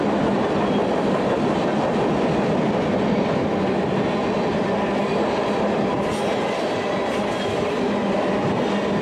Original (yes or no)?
yes